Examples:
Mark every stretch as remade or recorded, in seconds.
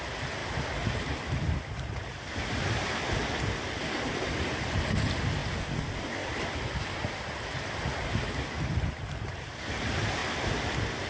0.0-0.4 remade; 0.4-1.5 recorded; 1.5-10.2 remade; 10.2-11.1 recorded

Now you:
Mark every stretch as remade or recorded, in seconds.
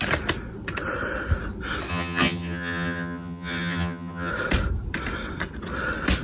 0.0-1.9 recorded; 1.9-4.3 remade; 4.3-6.2 recorded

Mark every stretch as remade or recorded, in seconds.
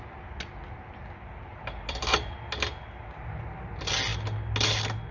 0.0-5.1 recorded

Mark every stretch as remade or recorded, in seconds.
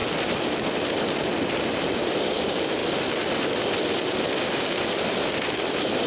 0.0-2.8 remade; 2.8-4.5 recorded; 4.5-6.1 remade